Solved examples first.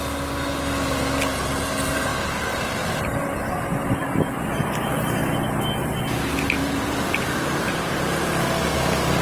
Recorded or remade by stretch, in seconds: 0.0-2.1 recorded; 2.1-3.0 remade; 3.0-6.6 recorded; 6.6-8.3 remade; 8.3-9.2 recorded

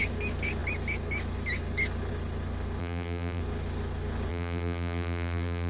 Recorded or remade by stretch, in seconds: 0.0-2.8 recorded; 2.8-3.4 remade; 3.4-4.3 recorded; 4.3-5.7 remade

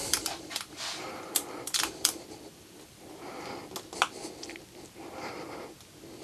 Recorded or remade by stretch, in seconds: 0.0-3.7 remade; 3.7-6.2 recorded

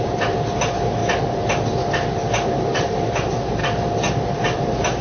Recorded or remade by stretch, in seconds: 0.0-1.0 remade; 1.0-2.5 recorded; 2.5-3.6 remade; 3.6-4.3 recorded; 4.3-5.0 remade

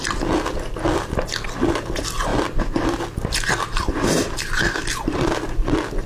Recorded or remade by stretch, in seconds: 0.0-6.1 recorded

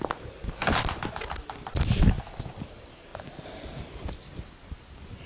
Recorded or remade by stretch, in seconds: 0.0-3.1 recorded; 3.1-3.9 remade; 3.9-5.3 recorded